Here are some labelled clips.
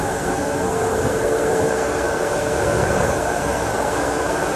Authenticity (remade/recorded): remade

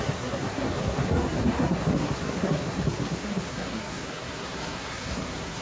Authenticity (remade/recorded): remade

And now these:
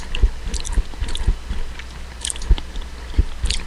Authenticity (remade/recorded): recorded